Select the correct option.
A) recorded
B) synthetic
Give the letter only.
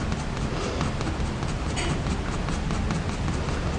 A